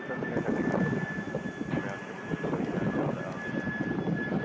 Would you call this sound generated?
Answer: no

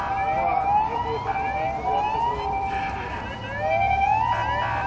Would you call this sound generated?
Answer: no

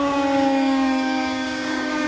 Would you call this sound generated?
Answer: yes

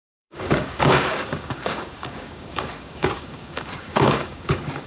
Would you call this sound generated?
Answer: yes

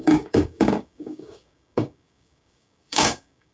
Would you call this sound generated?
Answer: yes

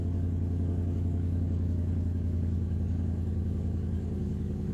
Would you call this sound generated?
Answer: yes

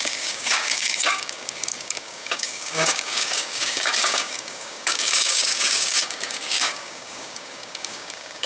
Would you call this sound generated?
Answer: yes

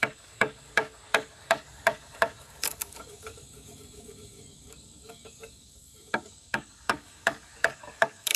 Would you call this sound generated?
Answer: yes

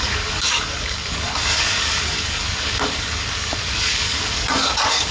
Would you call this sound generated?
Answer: yes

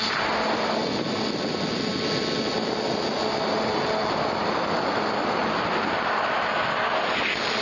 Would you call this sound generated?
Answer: no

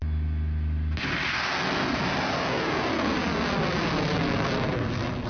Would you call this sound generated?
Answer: no